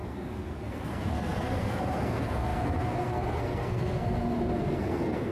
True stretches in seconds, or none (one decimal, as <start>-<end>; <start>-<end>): none